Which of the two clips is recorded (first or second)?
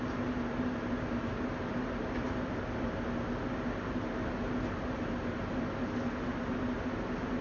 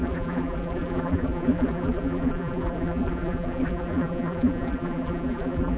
first